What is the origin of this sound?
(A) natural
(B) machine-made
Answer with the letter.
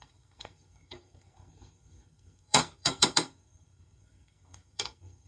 B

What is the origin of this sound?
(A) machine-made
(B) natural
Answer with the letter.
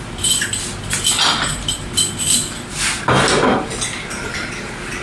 B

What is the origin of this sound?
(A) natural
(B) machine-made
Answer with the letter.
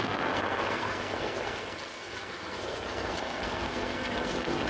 B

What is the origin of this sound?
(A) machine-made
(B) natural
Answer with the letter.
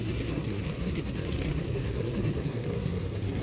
A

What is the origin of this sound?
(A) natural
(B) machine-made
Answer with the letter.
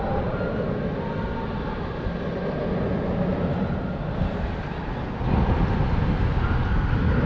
A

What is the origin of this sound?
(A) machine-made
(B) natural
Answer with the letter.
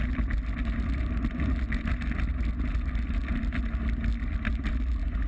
B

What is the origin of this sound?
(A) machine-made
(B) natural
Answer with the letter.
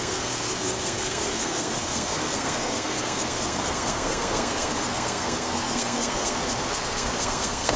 A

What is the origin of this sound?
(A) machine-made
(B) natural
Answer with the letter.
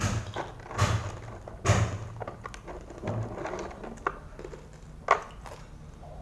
B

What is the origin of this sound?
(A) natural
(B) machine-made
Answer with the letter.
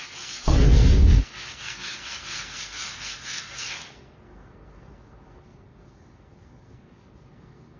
B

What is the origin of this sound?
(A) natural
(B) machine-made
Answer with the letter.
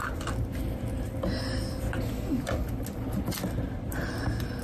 A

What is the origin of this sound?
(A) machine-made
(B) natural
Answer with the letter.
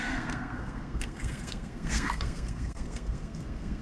A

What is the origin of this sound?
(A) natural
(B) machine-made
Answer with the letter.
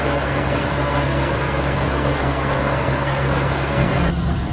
B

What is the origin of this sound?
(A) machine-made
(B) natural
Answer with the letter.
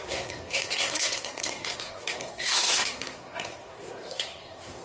A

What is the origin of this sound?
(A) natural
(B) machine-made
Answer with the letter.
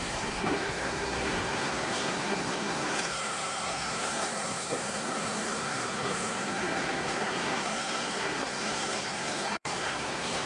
B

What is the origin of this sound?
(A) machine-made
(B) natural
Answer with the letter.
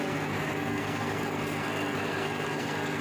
A